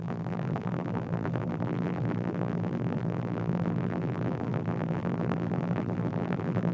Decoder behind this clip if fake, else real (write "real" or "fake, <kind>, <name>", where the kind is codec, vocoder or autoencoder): fake, vocoder, BigVGAN v2